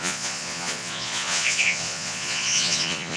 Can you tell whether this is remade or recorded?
remade